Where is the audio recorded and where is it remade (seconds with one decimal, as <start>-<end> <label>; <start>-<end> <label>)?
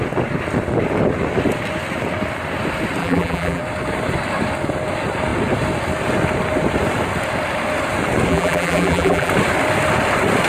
0.0-3.0 recorded; 3.0-3.6 remade; 3.6-8.3 recorded; 8.3-9.3 remade; 9.3-10.5 recorded